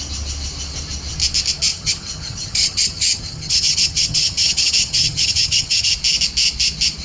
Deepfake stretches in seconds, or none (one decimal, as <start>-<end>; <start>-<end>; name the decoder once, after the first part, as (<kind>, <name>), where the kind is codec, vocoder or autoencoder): 1.7-5.9 (vocoder, HiFi-GAN)